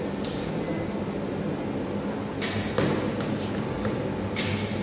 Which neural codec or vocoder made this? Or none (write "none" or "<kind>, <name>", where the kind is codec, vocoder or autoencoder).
none